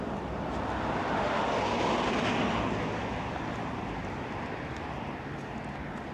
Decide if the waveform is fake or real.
real